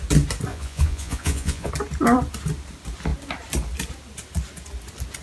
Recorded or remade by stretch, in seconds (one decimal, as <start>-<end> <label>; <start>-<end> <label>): 0.0-0.5 recorded; 0.5-1.7 remade; 1.7-5.2 recorded